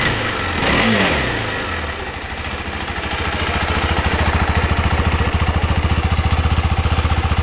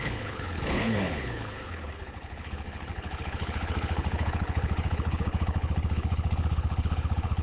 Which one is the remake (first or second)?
second